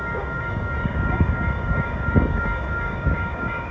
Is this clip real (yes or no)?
no